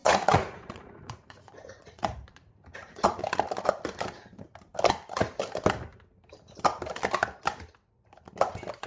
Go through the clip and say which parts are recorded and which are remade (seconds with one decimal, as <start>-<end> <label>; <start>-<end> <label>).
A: 0.0-3.2 remade; 3.2-8.9 recorded